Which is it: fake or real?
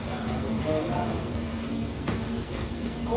fake